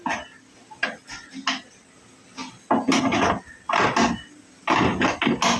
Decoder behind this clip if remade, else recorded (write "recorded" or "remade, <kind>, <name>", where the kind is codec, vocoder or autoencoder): recorded